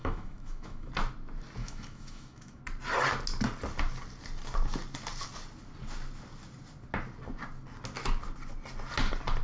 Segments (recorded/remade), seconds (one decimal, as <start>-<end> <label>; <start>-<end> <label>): 0.0-0.9 remade; 0.9-1.6 recorded; 1.6-2.6 remade; 2.6-9.4 recorded